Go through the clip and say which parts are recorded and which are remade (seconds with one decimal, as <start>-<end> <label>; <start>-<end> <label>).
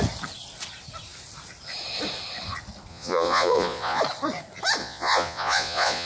0.0-2.9 recorded; 2.9-4.0 remade; 4.0-4.8 recorded; 4.8-6.1 remade